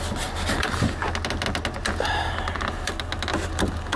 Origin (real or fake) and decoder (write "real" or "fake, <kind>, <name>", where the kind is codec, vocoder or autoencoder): real